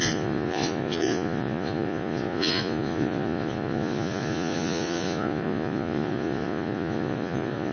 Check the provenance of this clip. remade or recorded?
remade